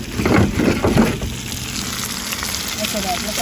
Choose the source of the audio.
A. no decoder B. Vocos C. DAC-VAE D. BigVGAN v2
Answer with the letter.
A